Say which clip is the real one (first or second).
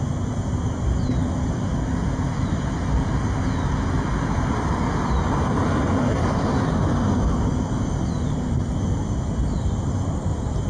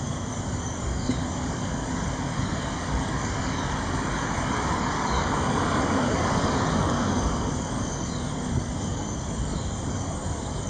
first